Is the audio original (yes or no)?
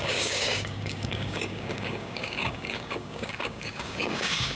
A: no